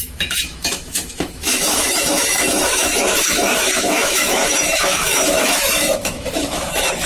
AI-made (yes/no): yes